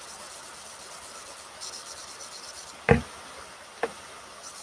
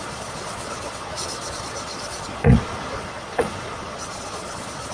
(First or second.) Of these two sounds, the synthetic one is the second